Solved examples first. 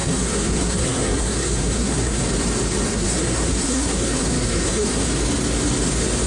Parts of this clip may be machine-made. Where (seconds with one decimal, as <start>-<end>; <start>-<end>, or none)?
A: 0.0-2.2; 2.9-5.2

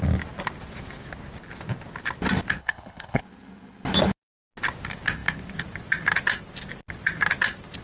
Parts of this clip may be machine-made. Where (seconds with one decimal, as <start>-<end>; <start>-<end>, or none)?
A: 2.6-3.2

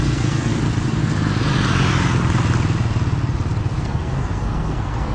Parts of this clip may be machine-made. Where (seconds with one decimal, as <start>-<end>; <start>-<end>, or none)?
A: 0.0-0.5; 3.6-5.1

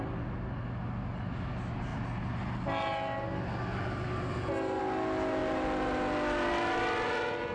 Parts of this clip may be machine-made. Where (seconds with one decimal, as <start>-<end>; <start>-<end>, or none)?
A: none

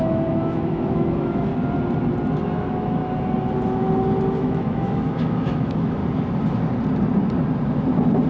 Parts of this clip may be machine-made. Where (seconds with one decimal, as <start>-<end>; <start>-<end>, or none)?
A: 0.0-1.5; 2.4-3.0; 4.4-6.0

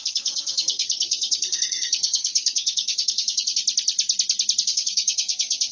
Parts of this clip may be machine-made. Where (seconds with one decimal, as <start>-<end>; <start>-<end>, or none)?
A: 0.0-3.6; 4.6-5.7